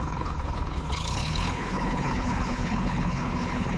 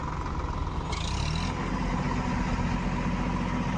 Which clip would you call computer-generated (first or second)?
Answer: first